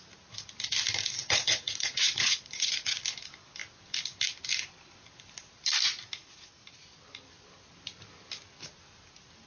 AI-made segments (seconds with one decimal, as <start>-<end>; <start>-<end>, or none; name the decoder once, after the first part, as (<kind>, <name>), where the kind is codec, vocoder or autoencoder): 1.2-3.0 (vocoder, Vocos)